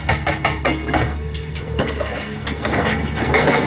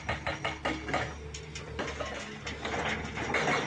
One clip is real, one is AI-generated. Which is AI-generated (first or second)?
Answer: first